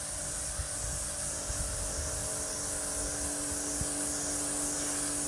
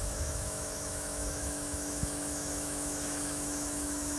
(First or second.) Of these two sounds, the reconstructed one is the second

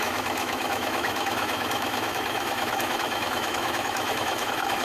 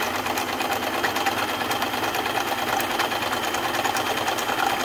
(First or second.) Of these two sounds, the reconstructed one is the first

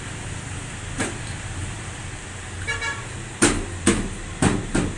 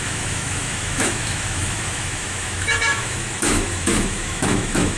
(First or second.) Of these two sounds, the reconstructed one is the second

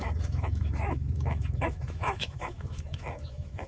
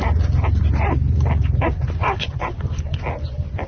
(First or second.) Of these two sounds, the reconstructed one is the first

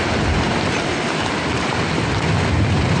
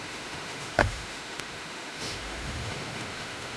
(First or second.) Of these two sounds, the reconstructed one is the second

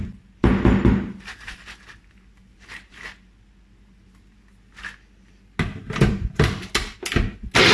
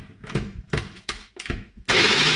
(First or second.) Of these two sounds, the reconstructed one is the second